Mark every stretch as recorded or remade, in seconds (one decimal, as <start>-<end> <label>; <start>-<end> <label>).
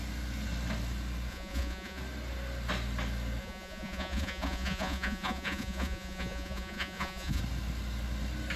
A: 0.0-1.3 recorded; 1.3-2.0 remade; 2.0-3.4 recorded; 3.4-7.4 remade; 7.4-8.6 recorded